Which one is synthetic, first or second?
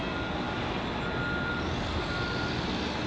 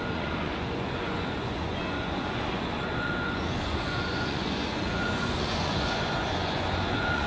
second